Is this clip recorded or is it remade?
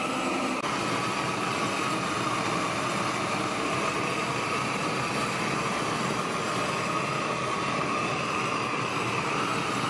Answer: remade